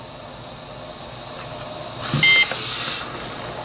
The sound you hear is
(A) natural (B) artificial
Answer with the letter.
A